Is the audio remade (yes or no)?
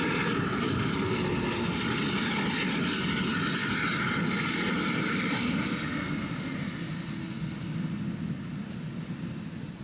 no